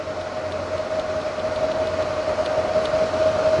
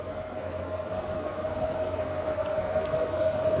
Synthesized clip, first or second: second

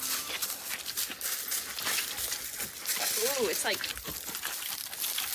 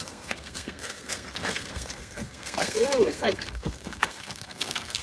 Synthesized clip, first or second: second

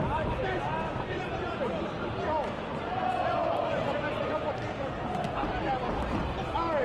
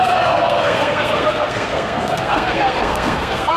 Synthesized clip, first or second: second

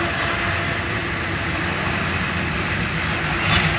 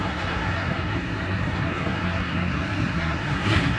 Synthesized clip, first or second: second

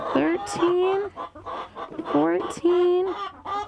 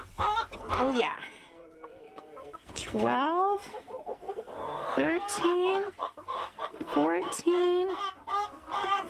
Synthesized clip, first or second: second